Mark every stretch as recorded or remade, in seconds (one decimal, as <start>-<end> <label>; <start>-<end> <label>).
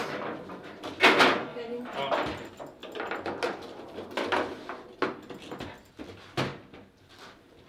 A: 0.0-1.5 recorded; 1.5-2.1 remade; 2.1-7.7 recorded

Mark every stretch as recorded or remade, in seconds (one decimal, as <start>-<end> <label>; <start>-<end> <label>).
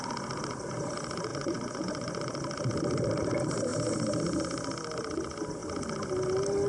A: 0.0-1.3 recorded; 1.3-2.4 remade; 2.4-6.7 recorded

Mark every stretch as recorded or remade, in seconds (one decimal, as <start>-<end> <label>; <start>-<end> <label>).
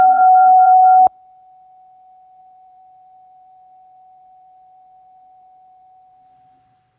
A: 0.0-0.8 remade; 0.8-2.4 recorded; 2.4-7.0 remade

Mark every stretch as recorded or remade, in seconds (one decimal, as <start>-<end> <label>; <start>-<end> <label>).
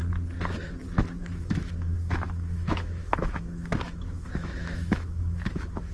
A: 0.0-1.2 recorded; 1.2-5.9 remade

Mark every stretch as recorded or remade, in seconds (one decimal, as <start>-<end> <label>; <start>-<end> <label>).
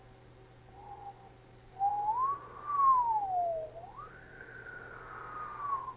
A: 0.0-6.0 recorded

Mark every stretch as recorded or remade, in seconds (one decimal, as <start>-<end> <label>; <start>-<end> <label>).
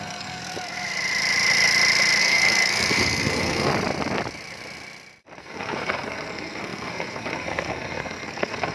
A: 0.0-0.4 remade; 0.4-2.2 recorded; 2.2-3.7 remade; 3.7-5.4 recorded; 5.4-8.7 remade